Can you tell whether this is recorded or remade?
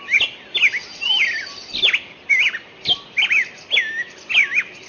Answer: recorded